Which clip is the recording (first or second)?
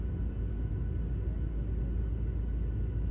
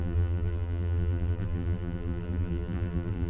first